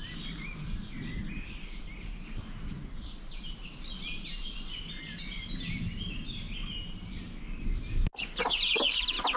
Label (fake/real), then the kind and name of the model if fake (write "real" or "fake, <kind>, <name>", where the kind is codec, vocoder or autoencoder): real